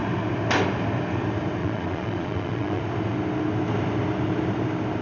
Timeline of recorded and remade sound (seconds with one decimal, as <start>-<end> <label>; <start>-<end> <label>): 0.0-1.6 recorded; 1.6-2.8 remade; 2.8-5.0 recorded